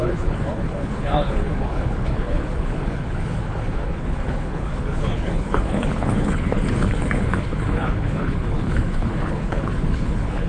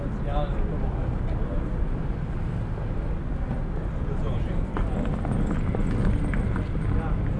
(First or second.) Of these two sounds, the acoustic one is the second